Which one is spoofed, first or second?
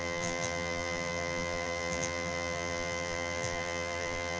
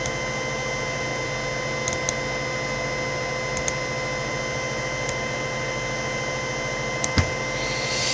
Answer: first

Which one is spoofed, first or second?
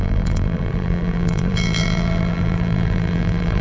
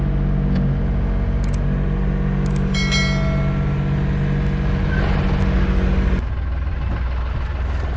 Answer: first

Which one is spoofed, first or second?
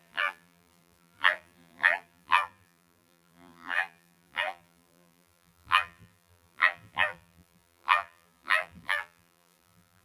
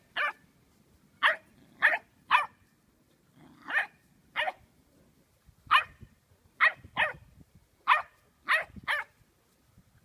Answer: first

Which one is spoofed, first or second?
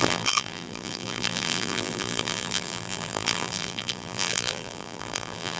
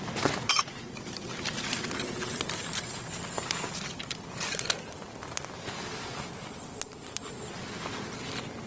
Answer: first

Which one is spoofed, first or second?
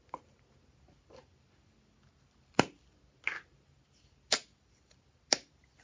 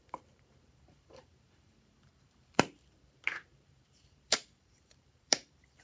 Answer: second